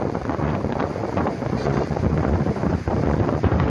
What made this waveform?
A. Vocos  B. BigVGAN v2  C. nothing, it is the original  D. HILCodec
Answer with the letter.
A